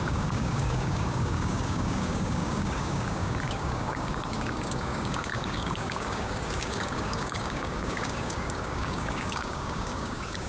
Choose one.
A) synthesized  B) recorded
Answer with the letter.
A